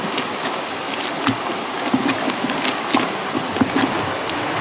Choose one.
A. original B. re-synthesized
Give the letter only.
A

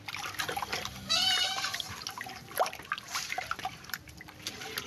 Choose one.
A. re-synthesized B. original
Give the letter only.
A